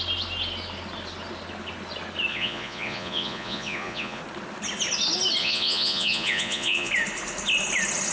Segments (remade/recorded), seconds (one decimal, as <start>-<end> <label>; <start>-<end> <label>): 0.0-2.3 recorded; 2.3-4.2 remade; 4.2-5.4 recorded; 5.4-6.9 remade; 6.9-8.1 recorded